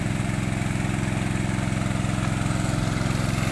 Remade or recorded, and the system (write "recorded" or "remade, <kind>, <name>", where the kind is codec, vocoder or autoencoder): recorded